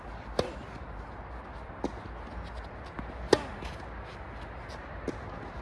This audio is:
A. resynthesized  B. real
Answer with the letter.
B